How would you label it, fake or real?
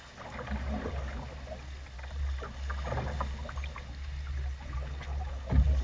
real